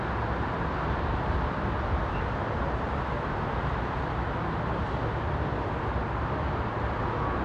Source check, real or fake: real